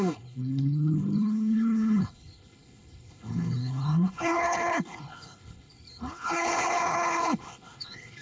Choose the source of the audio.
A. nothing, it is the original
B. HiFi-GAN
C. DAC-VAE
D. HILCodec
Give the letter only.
D